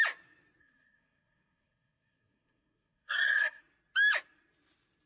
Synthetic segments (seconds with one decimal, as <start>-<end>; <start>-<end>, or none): 0.6-3.6